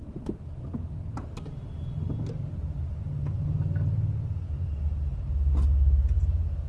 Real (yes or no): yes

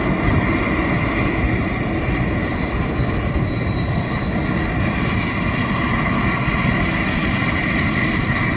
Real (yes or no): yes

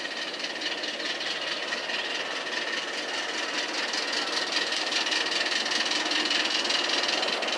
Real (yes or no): yes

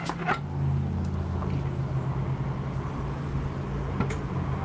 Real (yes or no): yes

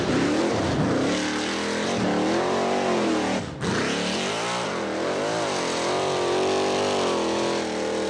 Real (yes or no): yes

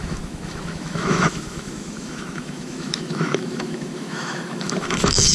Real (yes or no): no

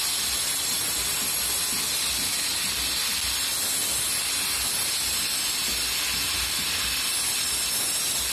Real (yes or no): yes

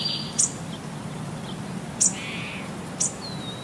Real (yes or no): yes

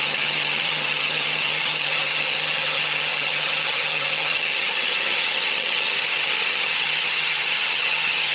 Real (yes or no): no